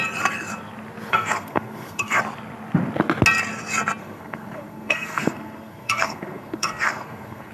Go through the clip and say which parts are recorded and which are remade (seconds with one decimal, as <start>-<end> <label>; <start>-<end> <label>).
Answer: 0.0-1.1 recorded; 1.1-2.2 remade; 2.2-4.0 recorded; 4.0-7.5 remade